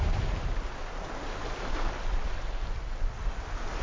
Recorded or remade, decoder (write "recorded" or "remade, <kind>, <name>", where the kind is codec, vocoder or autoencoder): recorded